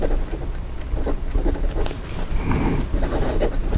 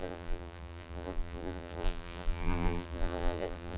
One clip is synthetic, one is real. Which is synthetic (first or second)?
second